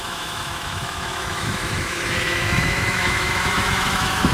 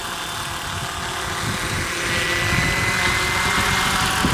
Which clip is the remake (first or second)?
first